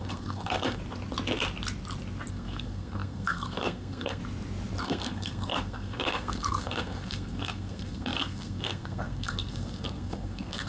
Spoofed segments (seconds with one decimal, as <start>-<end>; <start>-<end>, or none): 0.0-0.8; 2.3-4.2; 4.8-10.7